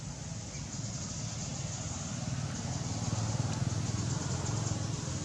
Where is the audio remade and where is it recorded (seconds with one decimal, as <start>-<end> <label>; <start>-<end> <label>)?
0.0-5.2 recorded